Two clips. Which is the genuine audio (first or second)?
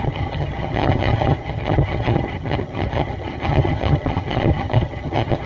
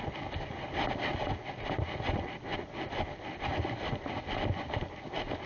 second